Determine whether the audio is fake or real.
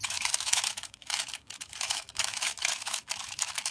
fake